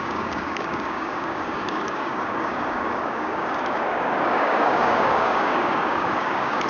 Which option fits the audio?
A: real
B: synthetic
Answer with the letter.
B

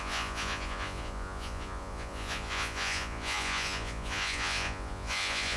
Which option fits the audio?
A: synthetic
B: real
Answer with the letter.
A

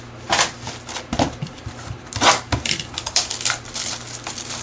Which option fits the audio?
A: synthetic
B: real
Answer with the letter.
B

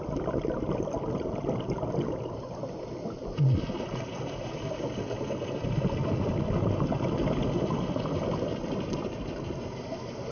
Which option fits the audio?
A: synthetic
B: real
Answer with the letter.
B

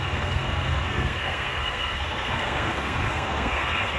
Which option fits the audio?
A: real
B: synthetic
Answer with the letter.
B